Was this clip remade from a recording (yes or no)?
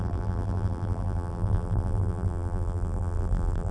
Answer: yes